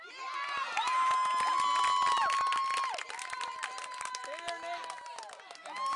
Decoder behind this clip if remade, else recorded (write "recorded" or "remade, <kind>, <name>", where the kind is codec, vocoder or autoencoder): recorded